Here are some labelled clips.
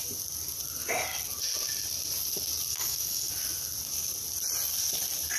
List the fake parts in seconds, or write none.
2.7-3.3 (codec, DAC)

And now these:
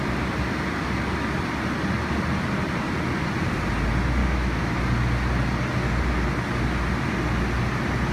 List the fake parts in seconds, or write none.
4.2-4.8 (autoencoder, DAC-VAE)

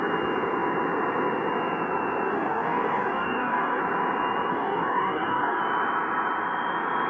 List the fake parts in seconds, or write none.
2.3-3.8 (codec, DAC); 4.5-5.6

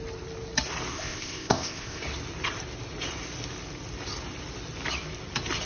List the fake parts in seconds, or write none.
0.9-2.0 (codec, ZipCodec)

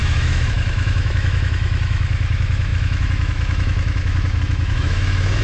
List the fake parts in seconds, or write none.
0.0-5.4 (autoencoder, DAC-VAE)

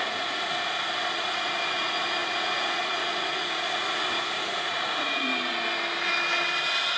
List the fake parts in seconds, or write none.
0.0-0.5 (vocoder, Vocos); 1.2-5.3

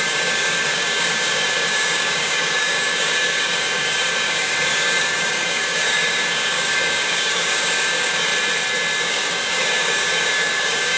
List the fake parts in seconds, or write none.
0.0-8.3 (codec, DAC); 9.0-11.0